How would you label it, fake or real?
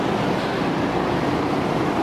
real